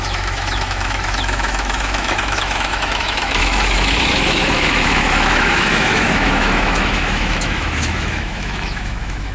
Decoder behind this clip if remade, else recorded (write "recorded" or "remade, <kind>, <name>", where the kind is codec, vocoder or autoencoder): remade, autoencoder, DAC-VAE